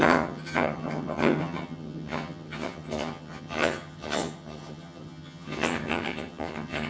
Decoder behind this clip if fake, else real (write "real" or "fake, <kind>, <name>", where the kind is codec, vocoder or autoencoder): fake, vocoder, HiFi-GAN